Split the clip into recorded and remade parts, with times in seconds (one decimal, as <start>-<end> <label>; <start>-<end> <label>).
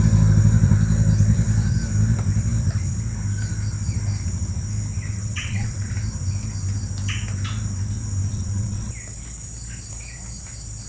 0.0-5.1 recorded; 5.1-5.9 remade; 5.9-8.3 recorded; 8.3-8.9 remade; 8.9-10.9 recorded